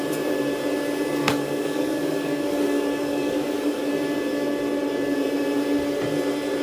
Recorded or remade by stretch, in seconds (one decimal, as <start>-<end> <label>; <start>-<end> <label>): 0.0-1.2 recorded; 1.2-3.9 remade; 3.9-6.6 recorded

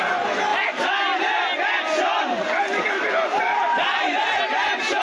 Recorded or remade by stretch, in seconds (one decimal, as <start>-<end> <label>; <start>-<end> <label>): 0.0-0.5 remade; 0.5-2.9 recorded; 2.9-5.0 remade

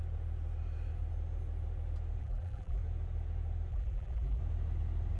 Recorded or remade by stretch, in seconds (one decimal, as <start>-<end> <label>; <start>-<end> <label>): 0.0-2.2 recorded; 2.2-2.8 remade; 2.8-3.7 recorded; 3.7-4.4 remade; 4.4-5.2 recorded

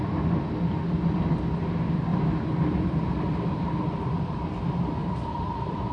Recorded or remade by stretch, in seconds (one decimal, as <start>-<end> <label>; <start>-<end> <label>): 0.0-2.1 recorded; 2.1-4.6 remade; 4.6-5.0 recorded; 5.0-5.9 remade

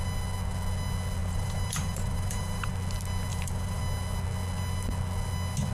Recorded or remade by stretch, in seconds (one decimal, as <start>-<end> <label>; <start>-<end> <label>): 0.0-1.2 recorded; 1.2-2.7 remade; 2.7-3.3 recorded; 3.3-3.8 remade; 3.8-5.7 recorded

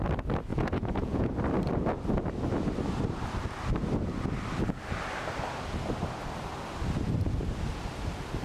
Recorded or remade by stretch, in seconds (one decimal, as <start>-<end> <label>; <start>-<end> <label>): 0.0-0.5 recorded; 0.5-1.3 remade; 1.3-8.4 recorded

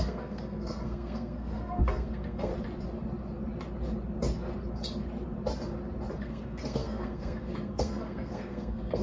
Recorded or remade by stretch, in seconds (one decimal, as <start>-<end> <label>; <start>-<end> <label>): 0.0-2.5 remade; 2.5-6.2 recorded; 6.2-9.0 remade

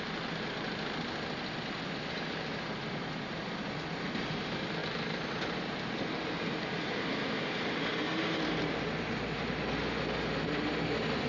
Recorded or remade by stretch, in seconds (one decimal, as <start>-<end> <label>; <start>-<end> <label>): 0.0-11.3 recorded